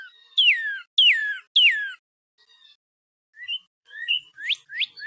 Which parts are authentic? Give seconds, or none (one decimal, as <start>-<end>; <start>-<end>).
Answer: 0.0-3.8; 4.4-5.1